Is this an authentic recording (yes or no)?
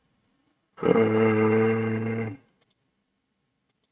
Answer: yes